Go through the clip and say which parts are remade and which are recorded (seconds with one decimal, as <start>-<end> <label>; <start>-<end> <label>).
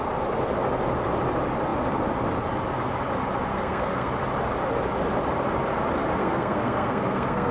0.0-3.5 recorded; 3.5-4.1 remade; 4.1-6.2 recorded; 6.2-7.5 remade